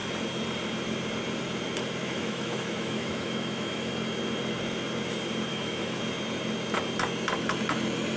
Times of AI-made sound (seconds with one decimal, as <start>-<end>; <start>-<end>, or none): 2.0-3.9; 5.5-6.0